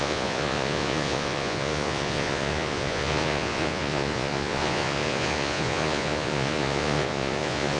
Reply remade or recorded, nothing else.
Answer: remade